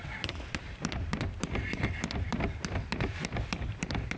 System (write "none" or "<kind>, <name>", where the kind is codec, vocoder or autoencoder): vocoder, BigVGAN v2